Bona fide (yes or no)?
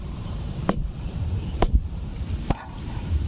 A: no